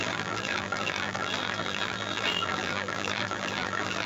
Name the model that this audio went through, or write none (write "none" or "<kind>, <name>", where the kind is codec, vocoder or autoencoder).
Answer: vocoder, BigVGAN v2